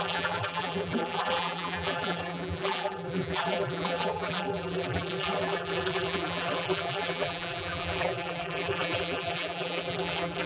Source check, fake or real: fake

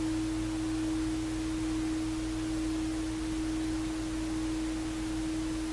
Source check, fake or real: real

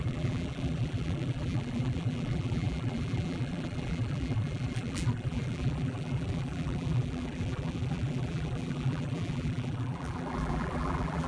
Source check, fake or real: fake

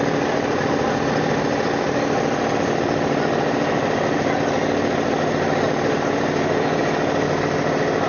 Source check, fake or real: real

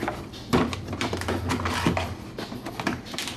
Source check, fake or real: fake